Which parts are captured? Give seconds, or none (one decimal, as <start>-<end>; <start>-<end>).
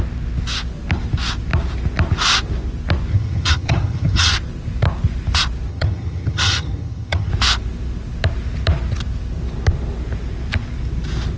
0.0-3.1; 4.3-5.7; 7.3-11.4